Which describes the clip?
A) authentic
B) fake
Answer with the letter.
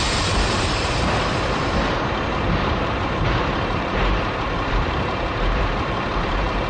B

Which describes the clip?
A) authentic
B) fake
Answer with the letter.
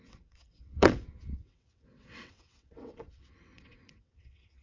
B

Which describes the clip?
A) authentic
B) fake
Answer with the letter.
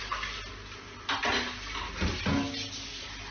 A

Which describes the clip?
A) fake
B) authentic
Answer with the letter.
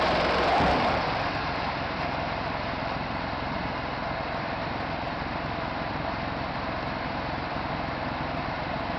A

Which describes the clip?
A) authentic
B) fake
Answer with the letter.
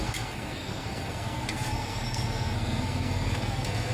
B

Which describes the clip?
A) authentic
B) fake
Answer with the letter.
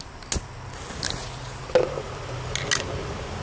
A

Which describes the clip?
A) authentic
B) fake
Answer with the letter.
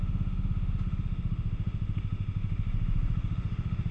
B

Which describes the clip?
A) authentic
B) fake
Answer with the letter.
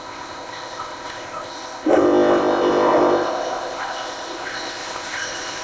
B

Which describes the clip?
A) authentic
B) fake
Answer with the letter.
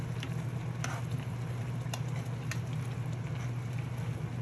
A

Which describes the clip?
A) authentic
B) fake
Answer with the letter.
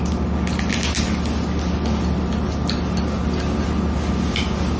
A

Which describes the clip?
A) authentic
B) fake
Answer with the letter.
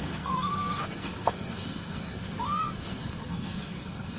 B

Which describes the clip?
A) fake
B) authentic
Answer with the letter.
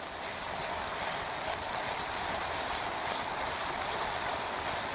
B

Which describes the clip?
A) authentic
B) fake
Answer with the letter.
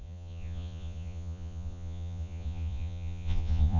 B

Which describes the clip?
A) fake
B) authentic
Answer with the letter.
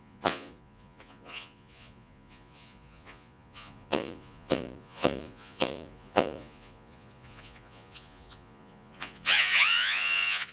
A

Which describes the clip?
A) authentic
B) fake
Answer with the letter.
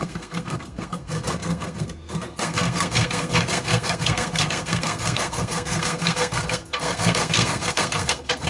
B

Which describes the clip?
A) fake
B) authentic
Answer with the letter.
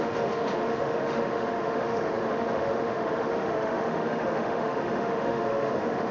A